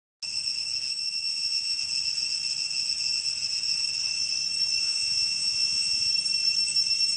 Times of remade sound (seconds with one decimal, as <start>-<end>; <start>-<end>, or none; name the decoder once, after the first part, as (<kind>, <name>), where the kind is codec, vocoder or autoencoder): 0.9-1.8 (vocoder, Vocos); 4.8-6.1